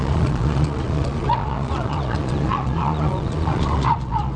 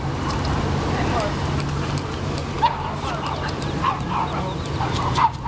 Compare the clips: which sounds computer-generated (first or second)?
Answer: first